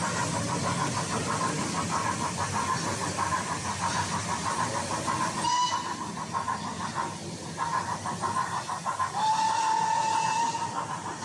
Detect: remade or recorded recorded